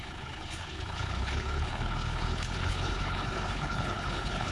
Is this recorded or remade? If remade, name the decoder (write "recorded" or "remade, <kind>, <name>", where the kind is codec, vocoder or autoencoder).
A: remade, codec, HILCodec